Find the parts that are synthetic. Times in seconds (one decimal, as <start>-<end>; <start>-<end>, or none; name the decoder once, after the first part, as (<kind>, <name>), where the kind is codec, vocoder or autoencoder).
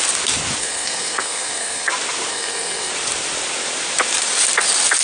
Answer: 0.6-1.9 (codec, SNAC); 2.3-2.9